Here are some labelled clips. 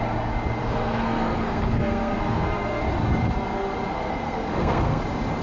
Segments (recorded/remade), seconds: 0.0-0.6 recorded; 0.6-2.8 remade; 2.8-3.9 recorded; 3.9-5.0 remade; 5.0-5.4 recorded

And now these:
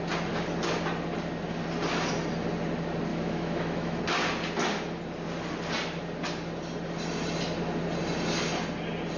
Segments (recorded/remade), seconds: 0.0-3.1 recorded; 3.1-4.0 remade; 4.0-9.2 recorded

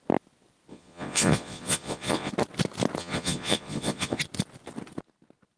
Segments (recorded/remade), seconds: 0.0-0.7 recorded; 0.7-2.3 remade; 2.3-3.0 recorded; 3.0-4.2 remade; 4.2-5.6 recorded

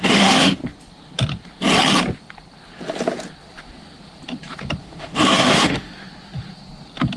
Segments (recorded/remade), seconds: 0.0-0.6 remade; 0.6-4.8 recorded; 4.8-5.9 remade; 5.9-7.2 recorded

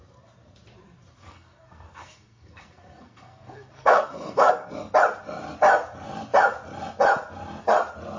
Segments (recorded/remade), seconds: 0.0-1.2 recorded; 1.2-4.5 remade; 4.5-8.2 recorded

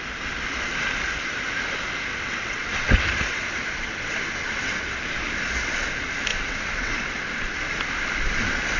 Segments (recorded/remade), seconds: 0.0-2.1 recorded; 2.1-5.0 remade; 5.0-6.3 recorded; 6.3-6.9 remade; 6.9-8.8 recorded

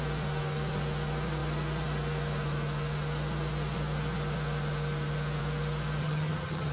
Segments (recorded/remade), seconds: 0.0-6.0 recorded; 6.0-6.7 remade

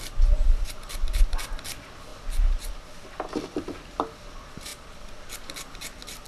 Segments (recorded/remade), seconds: 0.0-6.3 recorded